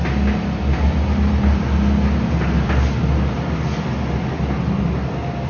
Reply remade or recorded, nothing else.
recorded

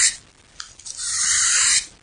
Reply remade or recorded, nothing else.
recorded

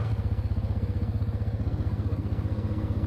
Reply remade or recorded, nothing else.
remade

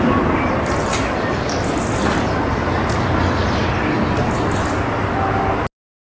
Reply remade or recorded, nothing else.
recorded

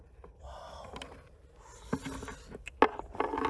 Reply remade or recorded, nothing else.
recorded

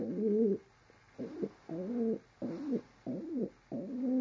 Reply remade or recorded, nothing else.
recorded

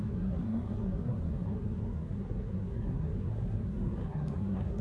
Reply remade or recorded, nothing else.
remade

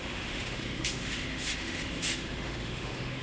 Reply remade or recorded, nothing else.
remade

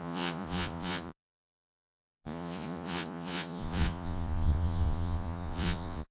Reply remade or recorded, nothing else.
remade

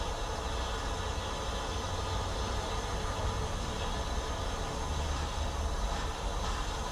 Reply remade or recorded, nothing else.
recorded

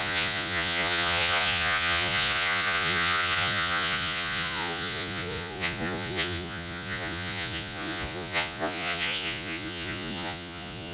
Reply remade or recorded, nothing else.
remade